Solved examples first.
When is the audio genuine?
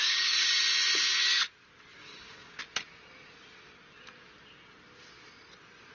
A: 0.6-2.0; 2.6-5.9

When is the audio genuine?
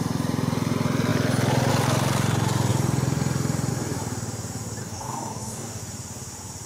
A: 0.0-4.8; 5.8-6.7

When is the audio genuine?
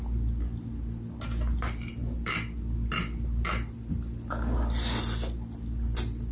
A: 0.0-6.3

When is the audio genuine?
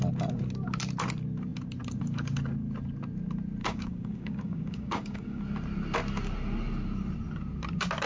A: 0.0-3.6; 5.4-8.1